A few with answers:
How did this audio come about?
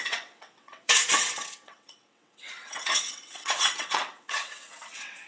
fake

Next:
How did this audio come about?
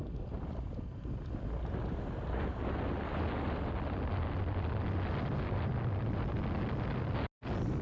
real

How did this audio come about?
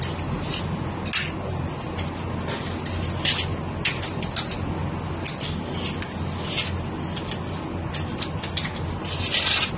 real